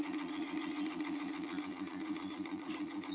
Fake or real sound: fake